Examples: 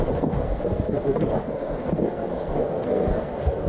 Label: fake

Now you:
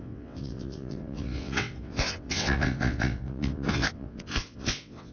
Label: fake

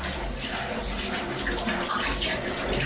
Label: real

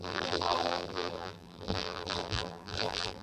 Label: fake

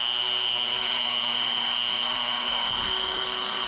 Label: fake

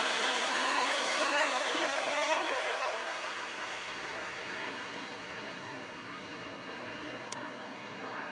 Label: fake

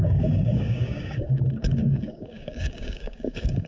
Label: fake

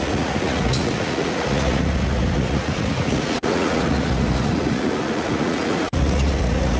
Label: fake